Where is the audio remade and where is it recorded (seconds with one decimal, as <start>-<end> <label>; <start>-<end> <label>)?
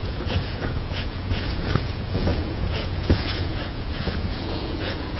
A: 0.0-5.2 remade